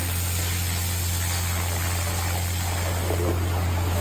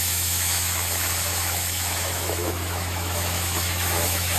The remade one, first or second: second